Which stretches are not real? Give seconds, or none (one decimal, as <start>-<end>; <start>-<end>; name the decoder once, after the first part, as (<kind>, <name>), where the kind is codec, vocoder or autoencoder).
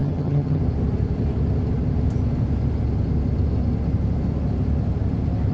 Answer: 0.0-0.6 (vocoder, HiFi-GAN)